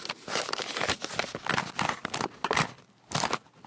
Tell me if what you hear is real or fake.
real